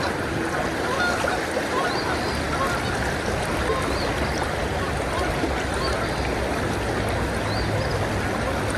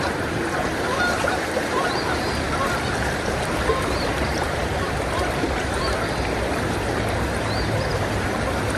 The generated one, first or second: second